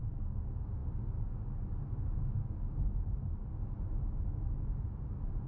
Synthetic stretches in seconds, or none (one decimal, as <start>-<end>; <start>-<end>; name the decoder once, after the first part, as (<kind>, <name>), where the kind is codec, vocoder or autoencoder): none

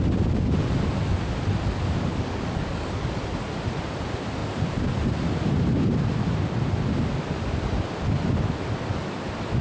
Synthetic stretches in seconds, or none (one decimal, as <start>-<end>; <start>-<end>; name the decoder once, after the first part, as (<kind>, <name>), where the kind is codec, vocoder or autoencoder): 2.1-3.2 (codec, DAC)

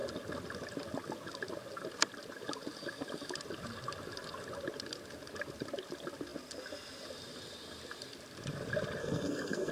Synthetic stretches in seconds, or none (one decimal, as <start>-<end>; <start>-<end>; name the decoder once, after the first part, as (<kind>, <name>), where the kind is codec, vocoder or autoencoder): 9.0-9.7 (codec, SNAC)